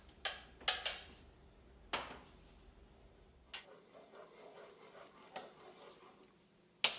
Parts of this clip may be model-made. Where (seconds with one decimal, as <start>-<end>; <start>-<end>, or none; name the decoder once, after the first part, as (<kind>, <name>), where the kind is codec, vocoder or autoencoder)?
none